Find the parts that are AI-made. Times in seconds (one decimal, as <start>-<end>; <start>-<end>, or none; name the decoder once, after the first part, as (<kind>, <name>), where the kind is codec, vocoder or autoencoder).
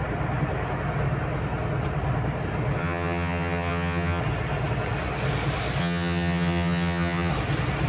2.8-4.2 (vocoder, HiFi-GAN); 5.8-7.3